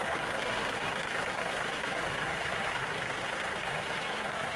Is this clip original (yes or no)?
no